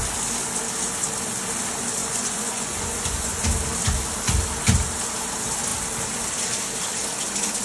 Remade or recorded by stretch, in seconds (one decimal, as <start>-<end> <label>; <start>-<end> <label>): 0.0-2.0 recorded; 2.0-3.4 remade; 3.4-7.6 recorded